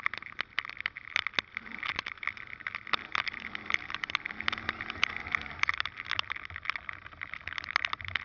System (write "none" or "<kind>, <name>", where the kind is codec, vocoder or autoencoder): none